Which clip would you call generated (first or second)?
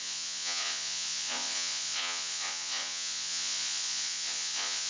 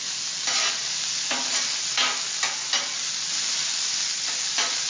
first